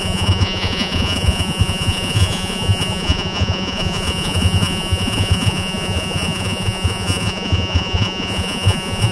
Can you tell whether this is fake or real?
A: fake